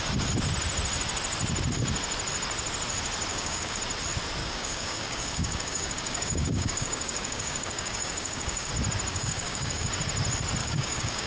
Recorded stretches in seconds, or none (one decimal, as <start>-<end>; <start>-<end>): 0.0-3.3; 3.8-4.4; 8.7-9.1; 9.9-10.6